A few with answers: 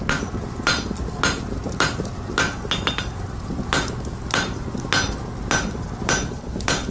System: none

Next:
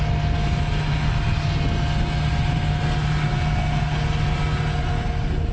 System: none